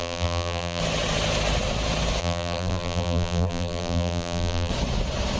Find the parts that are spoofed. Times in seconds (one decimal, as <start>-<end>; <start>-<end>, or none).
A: 0.0-0.8; 2.2-4.7